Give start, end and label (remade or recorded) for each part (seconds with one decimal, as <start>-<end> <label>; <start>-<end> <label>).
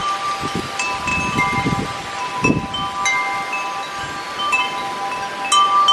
0.0-5.9 recorded